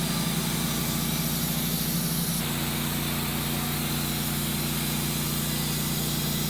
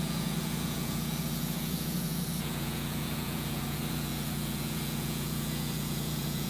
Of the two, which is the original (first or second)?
first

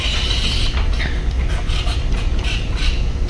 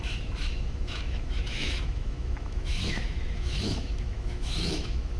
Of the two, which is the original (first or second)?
first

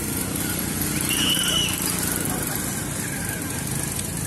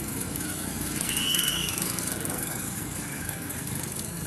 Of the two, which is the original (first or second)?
first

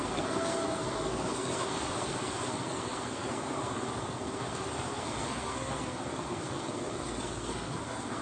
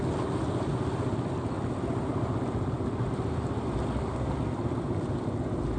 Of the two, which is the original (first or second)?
second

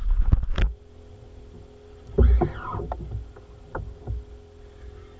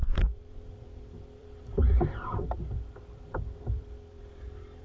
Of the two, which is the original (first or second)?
first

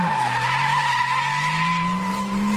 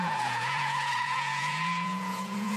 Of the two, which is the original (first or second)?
first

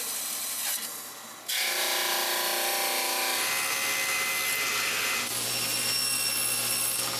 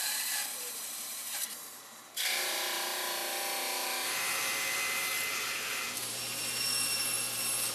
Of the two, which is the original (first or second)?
first